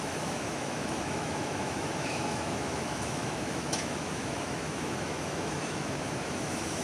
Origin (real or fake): fake